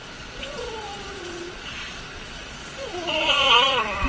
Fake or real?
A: fake